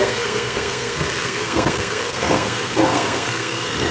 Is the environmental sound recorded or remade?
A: remade